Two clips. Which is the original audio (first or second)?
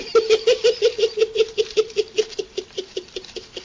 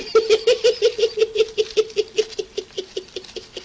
second